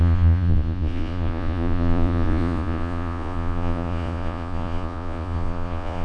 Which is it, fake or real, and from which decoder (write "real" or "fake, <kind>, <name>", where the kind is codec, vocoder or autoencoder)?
fake, vocoder, Vocos